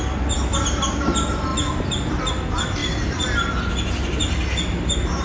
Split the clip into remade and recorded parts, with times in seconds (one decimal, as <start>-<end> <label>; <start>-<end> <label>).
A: 0.0-5.2 recorded